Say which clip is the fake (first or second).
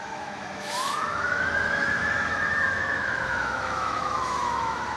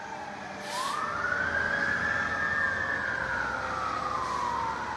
first